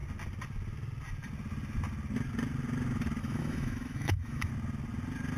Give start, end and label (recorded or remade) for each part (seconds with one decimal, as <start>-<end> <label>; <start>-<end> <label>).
0.0-3.2 recorded; 3.2-4.5 remade; 4.5-5.4 recorded

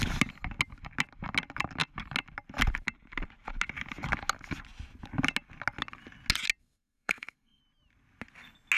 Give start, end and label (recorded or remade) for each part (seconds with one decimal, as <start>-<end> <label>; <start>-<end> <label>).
0.0-6.6 recorded; 6.6-7.6 remade; 7.6-8.8 recorded

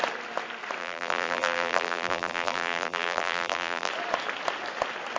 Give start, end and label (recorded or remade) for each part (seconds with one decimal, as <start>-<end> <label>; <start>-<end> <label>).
0.0-0.8 recorded; 0.8-3.9 remade; 3.9-5.2 recorded

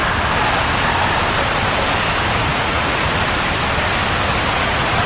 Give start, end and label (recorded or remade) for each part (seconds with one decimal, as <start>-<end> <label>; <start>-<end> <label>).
0.0-2.4 recorded; 2.4-3.2 remade; 3.2-4.5 recorded; 4.5-5.1 remade

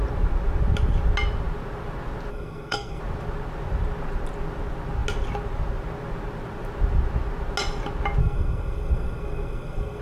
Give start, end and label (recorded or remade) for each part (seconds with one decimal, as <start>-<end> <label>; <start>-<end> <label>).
0.0-2.3 recorded; 2.3-3.0 remade; 3.0-8.2 recorded; 8.2-10.0 remade

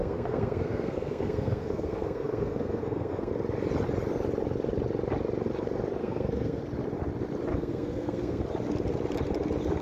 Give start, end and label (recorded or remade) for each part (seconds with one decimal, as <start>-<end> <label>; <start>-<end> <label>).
0.0-3.3 remade; 3.3-6.0 recorded; 6.0-6.6 remade; 6.6-7.5 recorded; 7.5-8.4 remade; 8.4-9.8 recorded

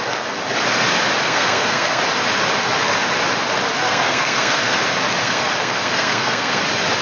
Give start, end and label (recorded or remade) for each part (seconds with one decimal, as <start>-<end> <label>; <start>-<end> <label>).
0.0-1.2 recorded; 1.2-2.0 remade; 2.0-3.8 recorded; 3.8-4.8 remade; 4.8-5.2 recorded; 5.2-6.6 remade; 6.6-7.0 recorded

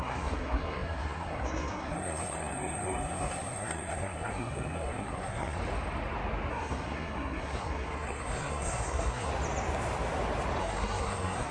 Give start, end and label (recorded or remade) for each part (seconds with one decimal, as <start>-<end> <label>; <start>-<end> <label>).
0.0-5.6 remade; 5.6-6.5 recorded; 6.5-9.3 remade; 9.3-10.6 recorded; 10.6-11.5 remade